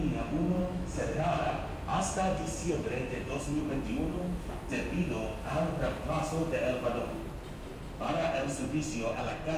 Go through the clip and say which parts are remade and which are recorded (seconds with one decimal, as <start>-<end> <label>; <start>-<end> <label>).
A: 0.0-0.6 recorded; 0.6-1.5 remade; 1.5-2.6 recorded; 2.6-3.6 remade; 3.6-9.6 recorded